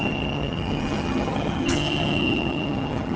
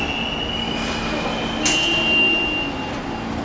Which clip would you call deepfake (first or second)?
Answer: first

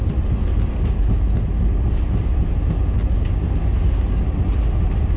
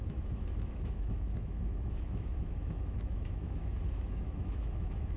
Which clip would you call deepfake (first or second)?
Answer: second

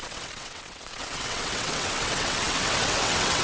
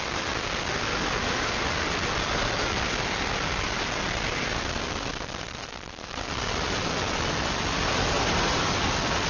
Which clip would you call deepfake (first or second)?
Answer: first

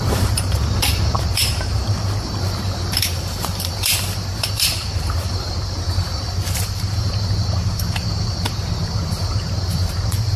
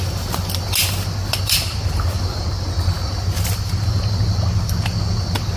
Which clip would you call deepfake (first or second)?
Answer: first